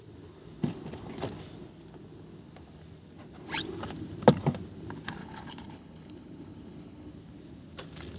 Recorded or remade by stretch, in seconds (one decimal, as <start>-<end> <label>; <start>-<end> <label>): 0.0-5.2 recorded; 5.2-7.1 remade; 7.1-8.2 recorded